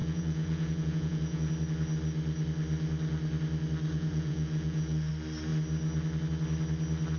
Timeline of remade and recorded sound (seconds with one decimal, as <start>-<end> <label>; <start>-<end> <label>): 0.0-1.5 remade; 1.5-3.9 recorded; 3.9-5.1 remade; 5.1-7.2 recorded